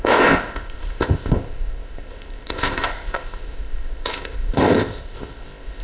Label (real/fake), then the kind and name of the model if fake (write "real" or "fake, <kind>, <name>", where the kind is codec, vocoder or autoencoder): fake, codec, ZipCodec